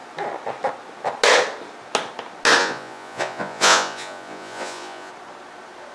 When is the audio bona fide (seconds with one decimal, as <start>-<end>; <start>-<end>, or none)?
0.0-2.6; 5.1-5.9